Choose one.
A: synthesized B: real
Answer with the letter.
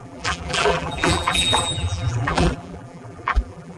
A